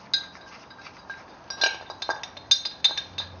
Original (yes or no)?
yes